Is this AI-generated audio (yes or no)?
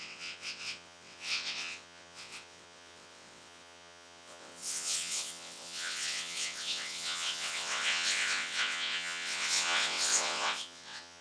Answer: yes